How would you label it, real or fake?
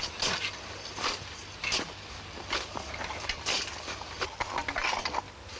real